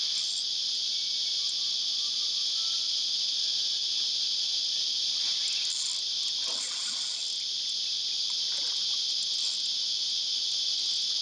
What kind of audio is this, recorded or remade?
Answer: recorded